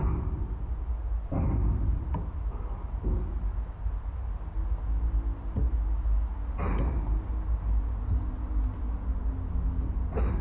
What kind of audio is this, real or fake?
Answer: real